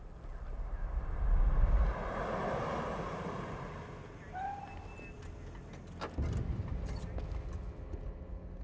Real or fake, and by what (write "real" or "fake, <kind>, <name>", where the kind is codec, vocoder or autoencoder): real